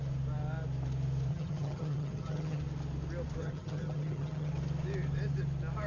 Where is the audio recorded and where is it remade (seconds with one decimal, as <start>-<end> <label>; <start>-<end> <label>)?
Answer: 0.0-1.3 recorded; 1.3-2.6 remade; 2.6-3.4 recorded; 3.4-4.5 remade; 4.5-5.9 recorded